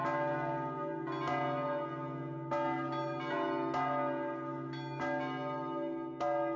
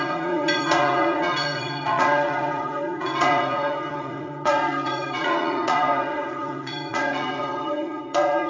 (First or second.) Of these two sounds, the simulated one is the second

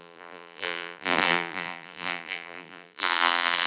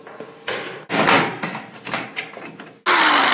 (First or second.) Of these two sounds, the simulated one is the first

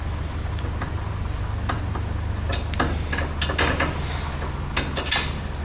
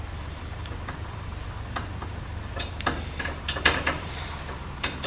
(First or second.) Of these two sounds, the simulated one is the second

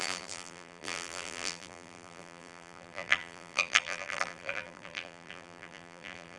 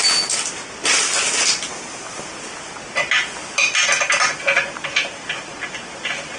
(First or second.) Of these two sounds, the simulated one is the first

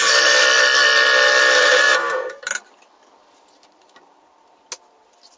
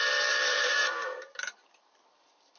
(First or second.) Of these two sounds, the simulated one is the second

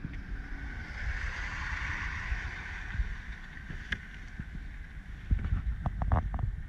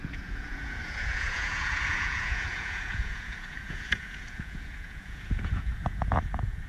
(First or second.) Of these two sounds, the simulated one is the second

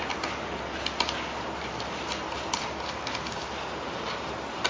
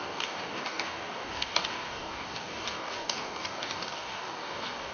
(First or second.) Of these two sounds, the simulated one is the second